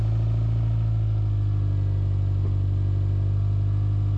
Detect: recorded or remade recorded